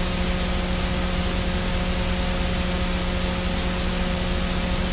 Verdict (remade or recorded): recorded